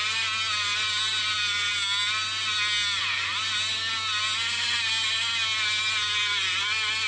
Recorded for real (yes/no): yes